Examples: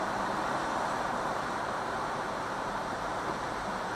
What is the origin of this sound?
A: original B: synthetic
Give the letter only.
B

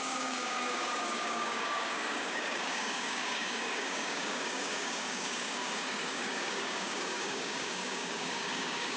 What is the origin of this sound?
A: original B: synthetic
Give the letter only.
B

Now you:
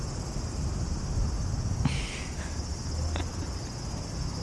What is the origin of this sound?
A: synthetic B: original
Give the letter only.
B